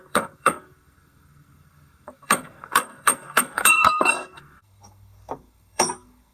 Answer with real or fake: fake